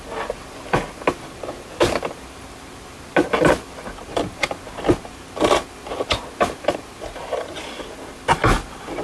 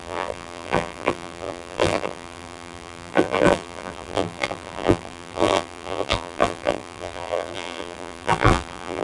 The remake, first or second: second